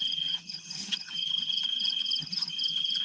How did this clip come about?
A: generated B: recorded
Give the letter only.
A